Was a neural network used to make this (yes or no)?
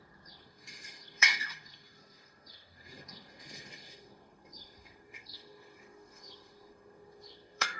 yes